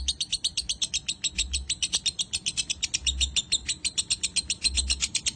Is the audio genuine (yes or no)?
yes